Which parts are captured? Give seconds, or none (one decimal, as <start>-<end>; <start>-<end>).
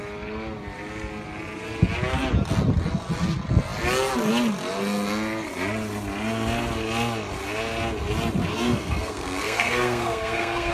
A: 0.0-8.5